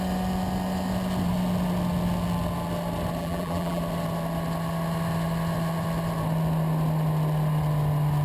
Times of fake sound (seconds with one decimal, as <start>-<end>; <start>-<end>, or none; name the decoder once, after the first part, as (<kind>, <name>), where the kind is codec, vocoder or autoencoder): 3.2-3.8 (vocoder, BigVGAN v2)